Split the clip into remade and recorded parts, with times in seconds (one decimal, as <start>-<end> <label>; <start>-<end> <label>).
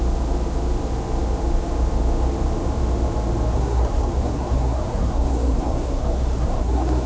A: 0.0-3.5 recorded; 3.5-7.1 remade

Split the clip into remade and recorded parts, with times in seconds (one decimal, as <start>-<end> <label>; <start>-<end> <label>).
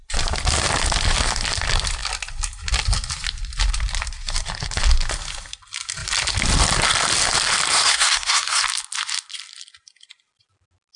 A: 0.0-7.7 recorded; 7.7-8.6 remade; 8.6-11.0 recorded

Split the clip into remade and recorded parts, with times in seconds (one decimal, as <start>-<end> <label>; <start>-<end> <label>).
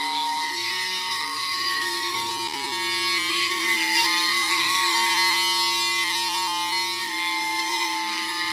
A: 0.0-2.3 remade; 2.3-3.3 recorded; 3.3-5.1 remade; 5.1-7.0 recorded; 7.0-8.5 remade